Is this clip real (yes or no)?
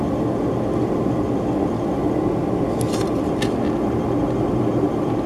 yes